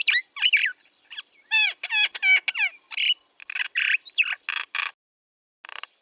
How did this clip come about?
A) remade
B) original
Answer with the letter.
B